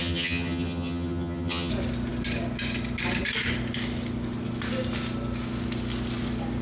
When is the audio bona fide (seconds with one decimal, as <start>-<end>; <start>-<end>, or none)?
1.7-6.6